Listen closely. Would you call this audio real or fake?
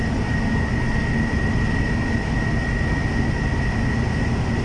real